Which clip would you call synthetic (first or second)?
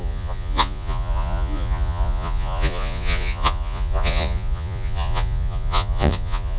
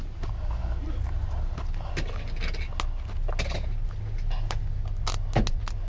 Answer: first